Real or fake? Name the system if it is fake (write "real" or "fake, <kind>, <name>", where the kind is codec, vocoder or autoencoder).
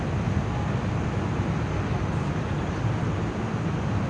real